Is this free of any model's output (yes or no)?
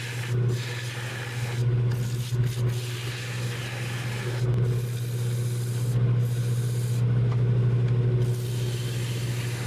yes